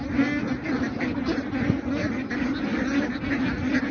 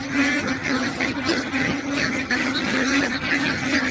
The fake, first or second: second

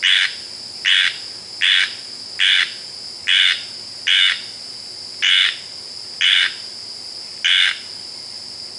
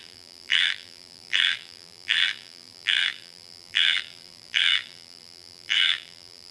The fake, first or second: second